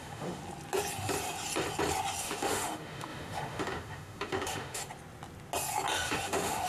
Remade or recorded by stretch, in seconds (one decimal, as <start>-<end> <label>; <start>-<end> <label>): 0.0-0.4 remade; 0.4-2.2 recorded; 2.2-4.8 remade; 4.8-5.9 recorded; 5.9-6.7 remade